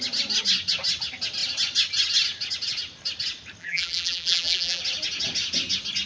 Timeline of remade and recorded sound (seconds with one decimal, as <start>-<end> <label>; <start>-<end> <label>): 0.0-3.6 recorded; 3.6-4.8 remade; 4.8-6.1 recorded